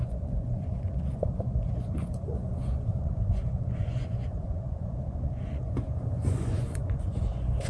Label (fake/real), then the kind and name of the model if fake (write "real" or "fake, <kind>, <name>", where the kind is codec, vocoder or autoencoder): fake, vocoder, Vocos